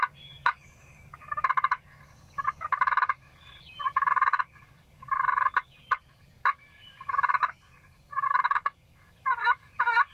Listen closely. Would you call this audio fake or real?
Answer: fake